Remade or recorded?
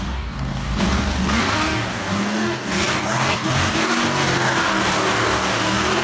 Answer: remade